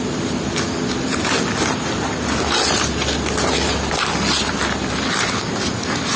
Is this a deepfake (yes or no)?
no